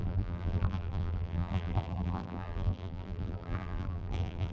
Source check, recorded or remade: remade